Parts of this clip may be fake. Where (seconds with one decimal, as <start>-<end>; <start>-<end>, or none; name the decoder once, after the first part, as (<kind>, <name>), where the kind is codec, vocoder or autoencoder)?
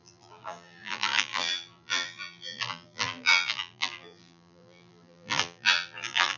0.0-6.4 (vocoder, BigVGAN v2)